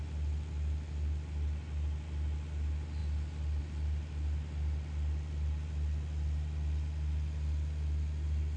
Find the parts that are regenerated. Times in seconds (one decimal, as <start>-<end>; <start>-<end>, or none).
none

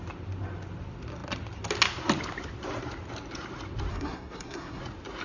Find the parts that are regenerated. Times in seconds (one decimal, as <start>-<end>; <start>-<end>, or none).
3.9-4.8